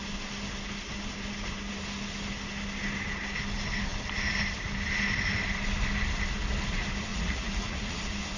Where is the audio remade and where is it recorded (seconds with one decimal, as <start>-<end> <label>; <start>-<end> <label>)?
0.0-7.1 recorded; 7.1-8.0 remade; 8.0-8.4 recorded